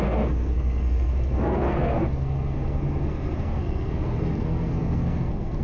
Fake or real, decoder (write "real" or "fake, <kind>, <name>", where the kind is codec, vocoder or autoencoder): fake, codec, SNAC